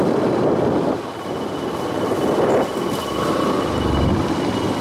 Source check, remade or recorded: recorded